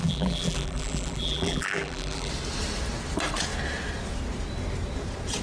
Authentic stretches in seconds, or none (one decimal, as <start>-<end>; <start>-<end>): 2.3-5.4